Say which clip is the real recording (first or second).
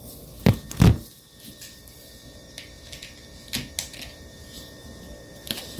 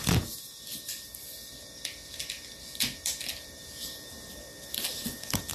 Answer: first